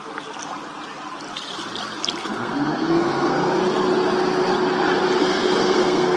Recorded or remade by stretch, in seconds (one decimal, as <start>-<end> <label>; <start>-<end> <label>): 0.0-2.2 recorded; 2.2-3.6 remade; 3.6-5.2 recorded; 5.2-6.2 remade